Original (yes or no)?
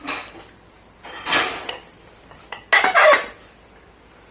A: yes